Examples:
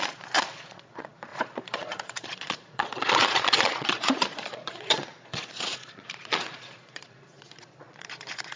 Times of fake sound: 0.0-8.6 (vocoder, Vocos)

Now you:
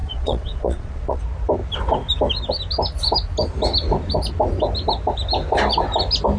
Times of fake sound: 0.0-1.2 (vocoder, Vocos)

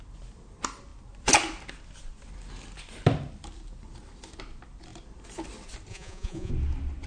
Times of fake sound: 5.9-6.5 (vocoder, Vocos)

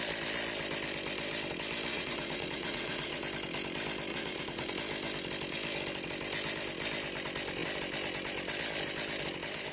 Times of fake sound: 1.9-3.2 (vocoder, Vocos); 4.1-4.7

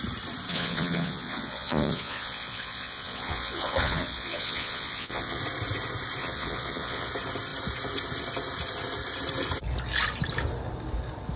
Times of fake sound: 0.5-5.4 (vocoder, Vocos); 6.2-7.1

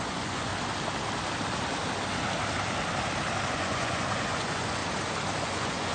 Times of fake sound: 0.0-0.5 (vocoder, Vocos); 3.5-4.8; 5.4-5.9

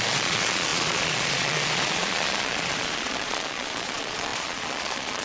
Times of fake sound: 0.0-5.2 (vocoder, Vocos)

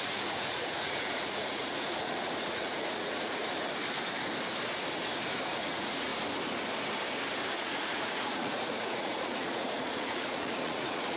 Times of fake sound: 0.0-3.4 (vocoder, Vocos); 5.5-6.1; 7.5-11.2